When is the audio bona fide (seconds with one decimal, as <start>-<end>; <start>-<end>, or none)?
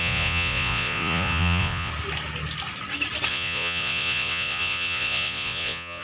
1.9-3.3